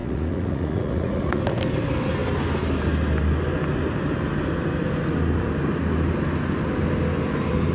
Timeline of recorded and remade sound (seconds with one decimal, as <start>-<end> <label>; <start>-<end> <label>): 0.0-1.4 remade; 1.4-7.7 recorded